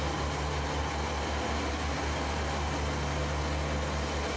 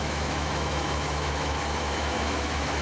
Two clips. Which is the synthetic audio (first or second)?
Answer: second